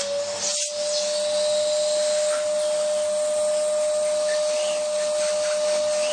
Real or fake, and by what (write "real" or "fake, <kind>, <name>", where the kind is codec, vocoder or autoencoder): real